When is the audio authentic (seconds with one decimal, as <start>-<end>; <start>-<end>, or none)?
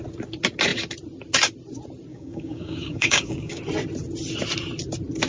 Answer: 0.0-2.1; 3.6-5.3